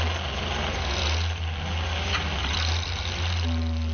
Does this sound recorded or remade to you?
recorded